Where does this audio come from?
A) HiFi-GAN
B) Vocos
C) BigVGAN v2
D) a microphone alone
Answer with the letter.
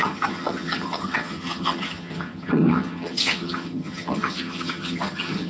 A